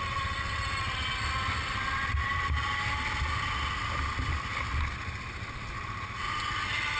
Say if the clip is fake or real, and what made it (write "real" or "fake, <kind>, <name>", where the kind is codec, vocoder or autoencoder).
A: real